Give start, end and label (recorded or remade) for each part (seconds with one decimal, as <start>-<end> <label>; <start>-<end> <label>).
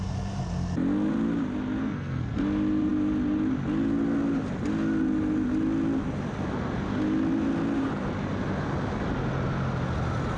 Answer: 0.0-1.8 recorded; 1.8-2.4 remade; 2.4-10.4 recorded